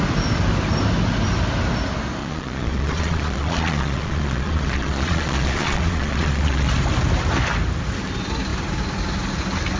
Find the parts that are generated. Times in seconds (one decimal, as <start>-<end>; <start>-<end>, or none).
2.2-6.7